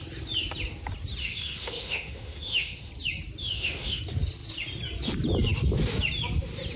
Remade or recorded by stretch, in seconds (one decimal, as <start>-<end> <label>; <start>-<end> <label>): 0.0-1.2 recorded; 1.2-2.9 remade; 2.9-3.4 recorded; 3.4-4.0 remade; 4.0-6.8 recorded